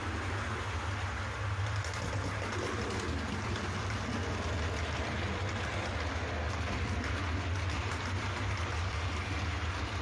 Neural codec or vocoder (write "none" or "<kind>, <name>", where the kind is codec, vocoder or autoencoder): none